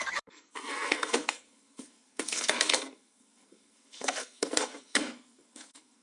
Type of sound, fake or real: fake